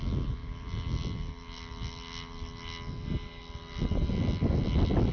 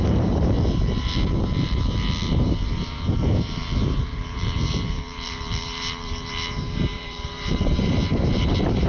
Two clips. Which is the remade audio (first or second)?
second